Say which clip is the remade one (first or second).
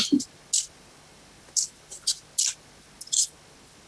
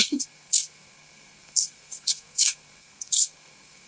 second